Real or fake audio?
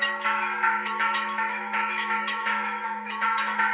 fake